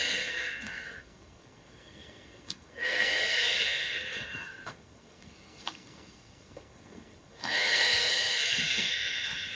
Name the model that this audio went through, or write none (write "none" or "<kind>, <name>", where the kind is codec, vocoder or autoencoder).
codec, SNAC